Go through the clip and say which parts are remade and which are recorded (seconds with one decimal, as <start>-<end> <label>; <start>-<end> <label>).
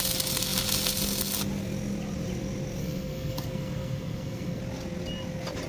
0.0-2.8 recorded; 2.8-4.6 remade; 4.6-5.7 recorded